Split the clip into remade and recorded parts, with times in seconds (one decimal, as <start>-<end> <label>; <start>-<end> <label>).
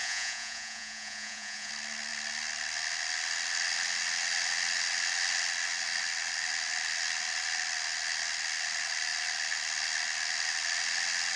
0.0-1.7 remade; 1.7-11.4 recorded